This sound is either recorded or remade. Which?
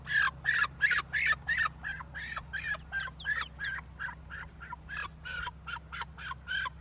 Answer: recorded